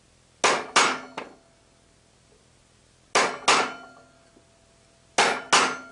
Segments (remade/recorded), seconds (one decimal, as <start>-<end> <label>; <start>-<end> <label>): 0.0-5.9 recorded